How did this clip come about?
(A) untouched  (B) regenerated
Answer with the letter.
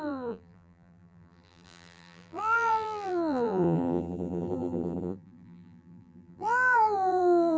B